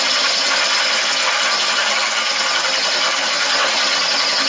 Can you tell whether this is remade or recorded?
recorded